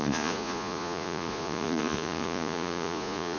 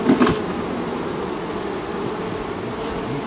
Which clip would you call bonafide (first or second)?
second